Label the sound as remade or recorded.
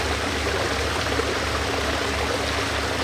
recorded